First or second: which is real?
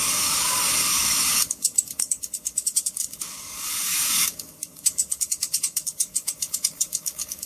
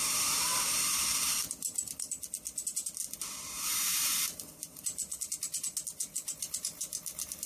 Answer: second